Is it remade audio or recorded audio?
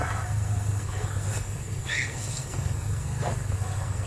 remade